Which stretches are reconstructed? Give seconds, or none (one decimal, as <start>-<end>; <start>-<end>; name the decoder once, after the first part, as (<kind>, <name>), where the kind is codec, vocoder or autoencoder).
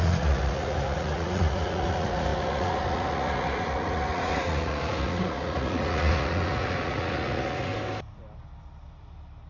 0.0-7.7 (vocoder, Vocos)